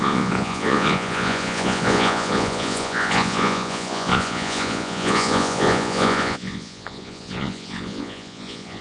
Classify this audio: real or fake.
fake